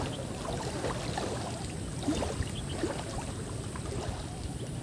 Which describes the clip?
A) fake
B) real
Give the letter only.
B